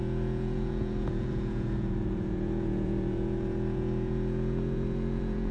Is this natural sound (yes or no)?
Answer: no